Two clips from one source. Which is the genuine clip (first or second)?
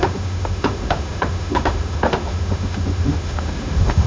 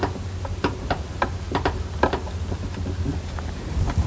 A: second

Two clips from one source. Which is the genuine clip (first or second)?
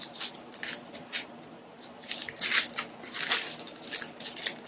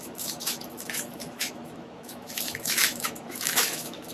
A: first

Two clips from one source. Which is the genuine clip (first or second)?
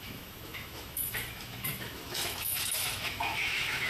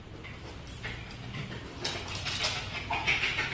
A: second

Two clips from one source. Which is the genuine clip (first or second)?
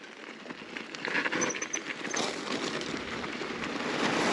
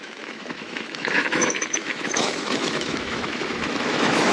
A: first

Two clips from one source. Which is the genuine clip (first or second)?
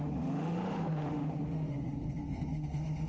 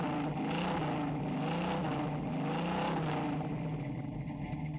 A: second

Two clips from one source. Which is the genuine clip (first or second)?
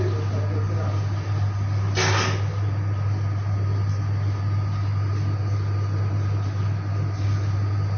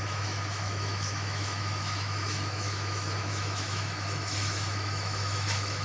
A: first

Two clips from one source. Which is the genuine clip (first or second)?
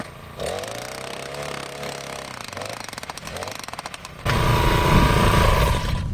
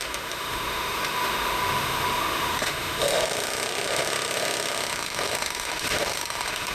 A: first